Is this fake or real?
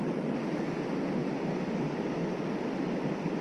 real